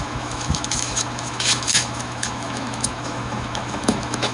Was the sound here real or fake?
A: fake